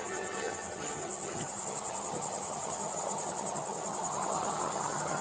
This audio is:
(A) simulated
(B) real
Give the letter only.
A